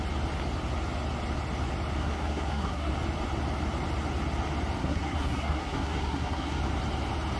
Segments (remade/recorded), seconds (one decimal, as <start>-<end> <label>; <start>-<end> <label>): 0.0-2.0 recorded; 2.0-2.9 remade; 2.9-4.8 recorded; 4.8-6.6 remade; 6.6-7.4 recorded